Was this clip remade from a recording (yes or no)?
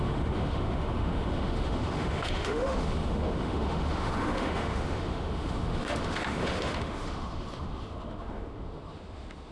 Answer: yes